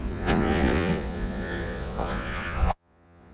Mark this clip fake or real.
fake